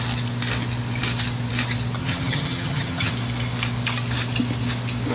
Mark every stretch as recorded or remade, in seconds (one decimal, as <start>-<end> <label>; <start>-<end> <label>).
0.0-2.0 recorded; 2.0-3.1 remade; 3.1-5.1 recorded